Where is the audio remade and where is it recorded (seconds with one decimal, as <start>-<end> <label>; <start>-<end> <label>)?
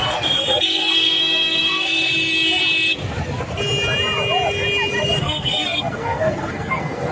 0.0-2.1 remade; 2.1-5.2 recorded; 5.2-7.1 remade